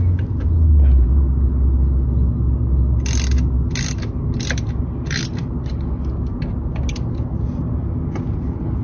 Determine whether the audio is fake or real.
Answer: real